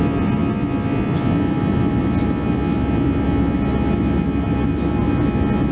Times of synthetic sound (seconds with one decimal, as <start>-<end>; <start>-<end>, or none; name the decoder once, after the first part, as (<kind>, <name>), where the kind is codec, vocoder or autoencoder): none

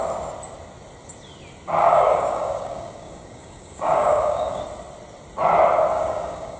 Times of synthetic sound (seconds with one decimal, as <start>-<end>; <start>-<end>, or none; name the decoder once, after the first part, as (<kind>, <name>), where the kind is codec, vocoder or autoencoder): 1.8-4.6 (codec, DAC); 5.9-6.6

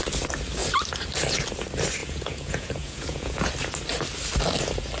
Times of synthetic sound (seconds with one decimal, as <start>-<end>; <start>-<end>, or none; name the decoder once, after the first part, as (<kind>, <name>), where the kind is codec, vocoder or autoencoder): 2.0-3.5 (vocoder, Vocos)

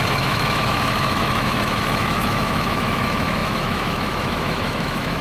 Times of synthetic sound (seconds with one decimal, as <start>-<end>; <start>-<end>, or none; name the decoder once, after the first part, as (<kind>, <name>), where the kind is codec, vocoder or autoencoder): 0.0-5.2 (autoencoder, DAC-VAE)

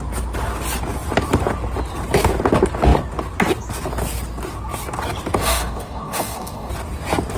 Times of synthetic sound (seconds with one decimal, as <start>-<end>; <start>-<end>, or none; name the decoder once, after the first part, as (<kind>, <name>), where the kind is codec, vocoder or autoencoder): 5.4-6.7 (codec, DAC)